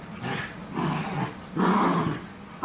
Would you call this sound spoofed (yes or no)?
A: no